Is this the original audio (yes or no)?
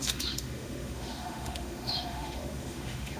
no